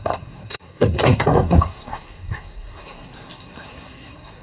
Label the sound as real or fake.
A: fake